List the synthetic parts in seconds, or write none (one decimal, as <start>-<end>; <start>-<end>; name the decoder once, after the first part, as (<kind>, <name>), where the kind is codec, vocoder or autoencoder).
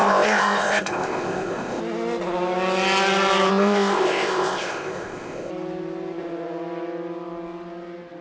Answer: 0.0-1.8 (codec, ZipCodec); 3.5-5.5